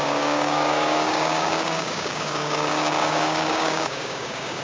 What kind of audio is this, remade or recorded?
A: remade